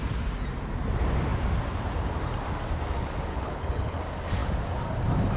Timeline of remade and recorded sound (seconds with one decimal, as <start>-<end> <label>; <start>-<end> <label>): 0.0-3.3 recorded; 3.3-4.0 remade; 4.0-5.4 recorded